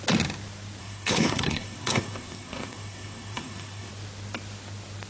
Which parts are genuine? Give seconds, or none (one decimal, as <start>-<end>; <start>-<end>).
0.0-0.8; 3.9-5.1